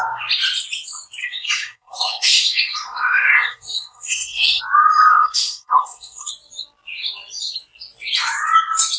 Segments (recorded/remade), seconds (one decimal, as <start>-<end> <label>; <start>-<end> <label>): 0.0-1.2 recorded; 1.2-4.6 remade; 4.6-5.1 recorded; 5.1-6.3 remade; 6.3-9.0 recorded